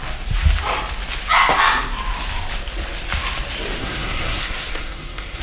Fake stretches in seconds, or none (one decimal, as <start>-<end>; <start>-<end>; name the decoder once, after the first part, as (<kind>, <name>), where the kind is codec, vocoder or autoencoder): 3.8-5.4 (codec, SNAC)